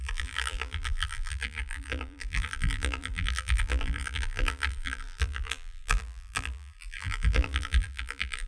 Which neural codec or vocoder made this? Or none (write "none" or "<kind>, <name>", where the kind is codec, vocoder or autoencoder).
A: vocoder, BigVGAN v2